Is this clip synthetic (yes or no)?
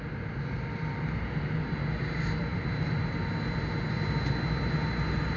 no